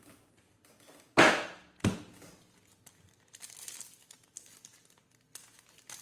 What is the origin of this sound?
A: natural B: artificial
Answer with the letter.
A